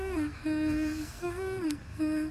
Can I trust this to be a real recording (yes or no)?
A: no